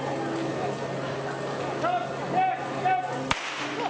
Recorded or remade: recorded